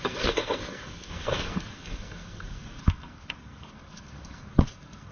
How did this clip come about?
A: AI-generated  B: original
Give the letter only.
A